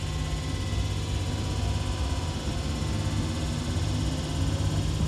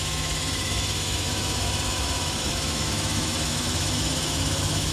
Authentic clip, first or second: first